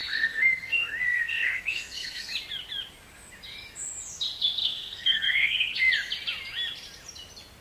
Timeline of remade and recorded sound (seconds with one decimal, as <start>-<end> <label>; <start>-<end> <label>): 0.0-2.3 remade; 2.3-4.6 recorded; 4.6-5.9 remade; 5.9-7.6 recorded